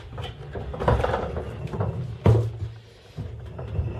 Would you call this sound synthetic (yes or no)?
no